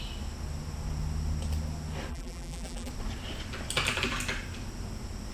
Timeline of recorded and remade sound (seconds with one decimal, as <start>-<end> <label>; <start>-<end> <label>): 0.0-2.1 recorded; 2.1-2.9 remade; 2.9-5.3 recorded